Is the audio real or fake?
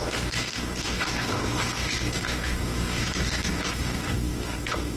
fake